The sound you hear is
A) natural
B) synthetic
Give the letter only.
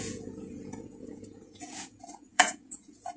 B